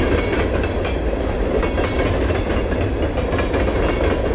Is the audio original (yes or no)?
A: yes